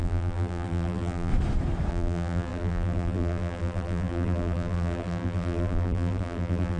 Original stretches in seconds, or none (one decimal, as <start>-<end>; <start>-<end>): 1.3-1.9